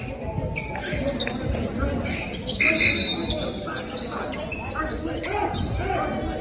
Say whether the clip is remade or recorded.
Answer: recorded